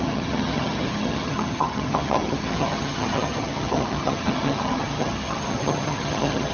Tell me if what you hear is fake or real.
fake